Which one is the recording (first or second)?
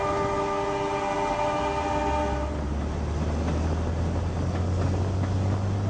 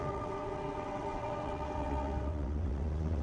first